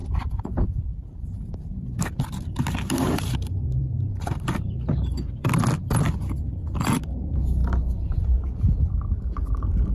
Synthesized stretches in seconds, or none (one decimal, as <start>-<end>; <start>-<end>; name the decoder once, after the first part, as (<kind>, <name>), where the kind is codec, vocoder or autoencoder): 0.0-1.5 (vocoder, BigVGAN v2); 3.8-5.5; 7.6-8.5